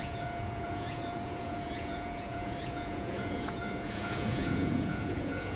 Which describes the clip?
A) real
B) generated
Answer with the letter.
B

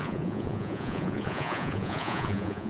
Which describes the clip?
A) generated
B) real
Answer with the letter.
A